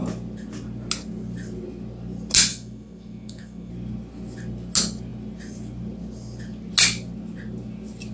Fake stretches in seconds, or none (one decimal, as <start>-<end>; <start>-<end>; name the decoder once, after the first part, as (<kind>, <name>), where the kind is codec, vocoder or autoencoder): 2.5-3.7 (autoencoder, DAC-VAE)